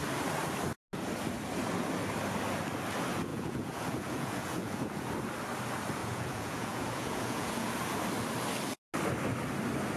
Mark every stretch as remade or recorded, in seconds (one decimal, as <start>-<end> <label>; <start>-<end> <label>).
0.0-3.3 recorded; 3.3-5.1 remade; 5.1-6.0 recorded; 6.0-7.7 remade; 7.7-10.0 recorded